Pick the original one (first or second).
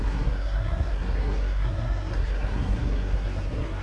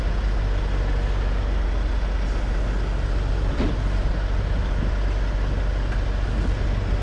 second